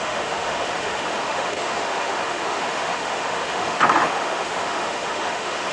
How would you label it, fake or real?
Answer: fake